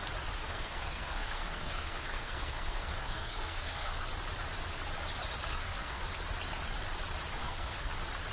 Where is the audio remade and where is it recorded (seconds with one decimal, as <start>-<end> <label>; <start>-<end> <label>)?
0.0-0.4 recorded; 0.4-4.0 remade; 4.0-5.5 recorded; 5.5-6.0 remade; 6.0-7.4 recorded; 7.4-7.9 remade; 7.9-8.3 recorded